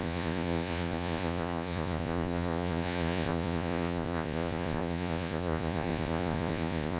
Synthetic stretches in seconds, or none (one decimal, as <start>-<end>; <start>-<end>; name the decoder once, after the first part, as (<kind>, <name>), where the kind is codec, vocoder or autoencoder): 0.0-7.0 (vocoder, Vocos)